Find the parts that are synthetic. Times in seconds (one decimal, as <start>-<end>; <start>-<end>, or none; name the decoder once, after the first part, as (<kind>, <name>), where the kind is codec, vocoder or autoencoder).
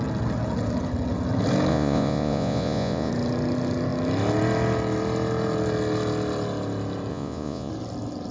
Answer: 1.7-3.1 (vocoder, Vocos); 7.1-7.7